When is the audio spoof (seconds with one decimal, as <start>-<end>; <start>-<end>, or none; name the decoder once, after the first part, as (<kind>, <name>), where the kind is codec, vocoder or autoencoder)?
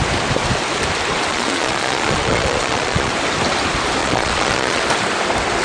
1.3-3.1 (vocoder, Vocos); 4.0-4.8